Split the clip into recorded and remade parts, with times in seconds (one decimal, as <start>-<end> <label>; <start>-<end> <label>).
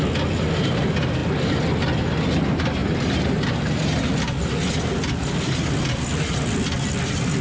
0.0-2.8 recorded; 2.8-3.7 remade; 3.7-7.4 recorded